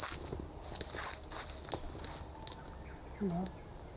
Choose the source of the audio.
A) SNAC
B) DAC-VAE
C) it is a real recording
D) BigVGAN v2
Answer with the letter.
C